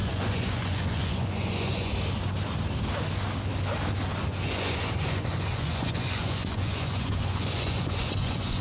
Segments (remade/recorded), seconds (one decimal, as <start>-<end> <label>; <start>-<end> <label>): 0.0-1.9 remade; 1.9-4.3 recorded; 4.3-8.6 remade